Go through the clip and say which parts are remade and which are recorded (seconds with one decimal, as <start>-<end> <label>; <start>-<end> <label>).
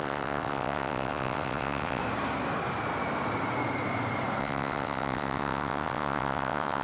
0.0-2.0 remade; 2.0-4.4 recorded; 4.4-6.8 remade